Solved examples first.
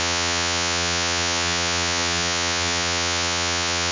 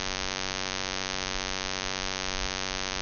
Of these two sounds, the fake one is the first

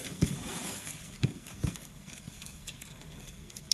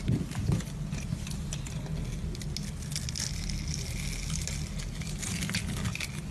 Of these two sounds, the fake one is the first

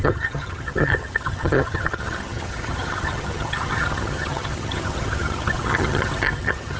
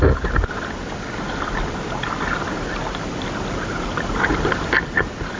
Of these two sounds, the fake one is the first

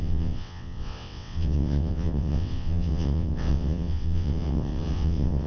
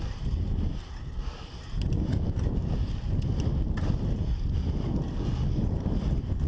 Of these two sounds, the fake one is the first